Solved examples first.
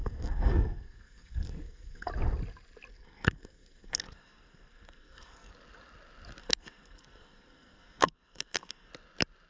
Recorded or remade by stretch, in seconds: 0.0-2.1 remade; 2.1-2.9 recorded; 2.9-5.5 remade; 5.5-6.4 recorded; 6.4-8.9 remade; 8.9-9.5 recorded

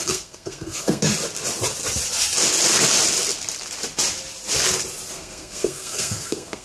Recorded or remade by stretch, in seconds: 0.0-1.1 remade; 1.1-5.1 recorded; 5.1-6.6 remade

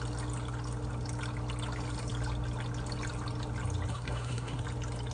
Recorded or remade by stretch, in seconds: 0.0-3.9 recorded; 3.9-4.6 remade; 4.6-5.1 recorded

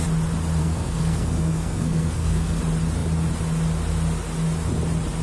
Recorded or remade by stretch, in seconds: 0.0-0.6 recorded; 0.6-2.6 remade; 2.6-5.2 recorded